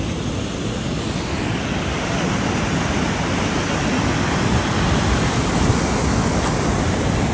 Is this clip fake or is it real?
real